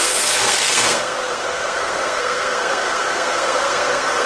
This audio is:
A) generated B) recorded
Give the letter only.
A